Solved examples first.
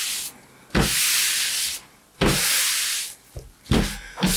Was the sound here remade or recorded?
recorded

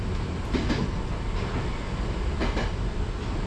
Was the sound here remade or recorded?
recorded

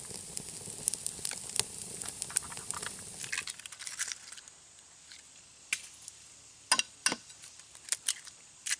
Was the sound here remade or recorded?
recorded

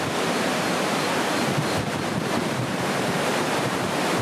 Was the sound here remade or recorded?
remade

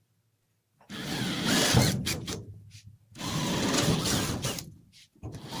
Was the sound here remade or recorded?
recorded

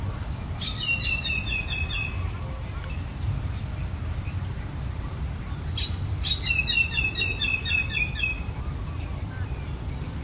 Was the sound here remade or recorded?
remade